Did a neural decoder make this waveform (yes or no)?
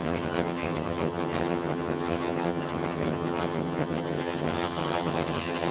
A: yes